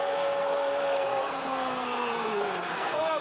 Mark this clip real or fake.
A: fake